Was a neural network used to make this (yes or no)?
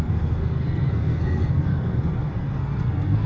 yes